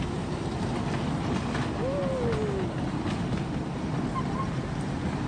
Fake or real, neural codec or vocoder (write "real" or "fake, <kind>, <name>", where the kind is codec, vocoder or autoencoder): real